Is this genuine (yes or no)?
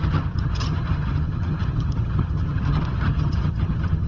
no